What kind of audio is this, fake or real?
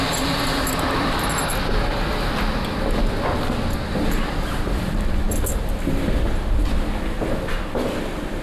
real